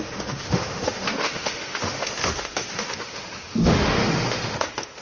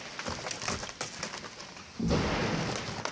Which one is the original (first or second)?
second